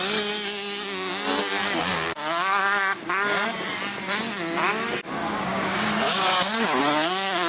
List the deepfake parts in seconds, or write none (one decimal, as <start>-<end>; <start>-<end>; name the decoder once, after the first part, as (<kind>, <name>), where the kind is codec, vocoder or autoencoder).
5.2-5.9 (codec, DAC)

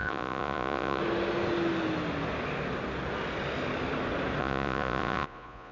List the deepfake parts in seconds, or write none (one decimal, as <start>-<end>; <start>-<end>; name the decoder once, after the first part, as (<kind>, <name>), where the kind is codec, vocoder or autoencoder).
0.0-1.0 (vocoder, Vocos); 4.4-5.7

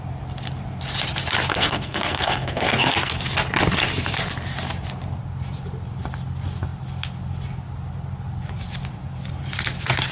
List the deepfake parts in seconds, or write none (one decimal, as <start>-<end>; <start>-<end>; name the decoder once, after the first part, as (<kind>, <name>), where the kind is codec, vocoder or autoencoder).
1.5-3.1 (codec, SNAC)

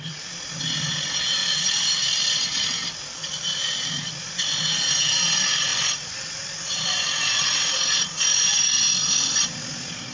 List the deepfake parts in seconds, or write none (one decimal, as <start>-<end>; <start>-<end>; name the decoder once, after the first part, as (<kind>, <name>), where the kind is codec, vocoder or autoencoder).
1.4-4.3 (vocoder, BigVGAN v2); 5.7-6.7

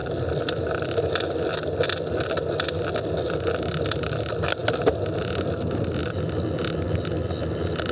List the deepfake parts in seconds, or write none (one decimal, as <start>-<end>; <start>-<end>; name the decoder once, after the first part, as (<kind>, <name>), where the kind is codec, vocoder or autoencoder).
none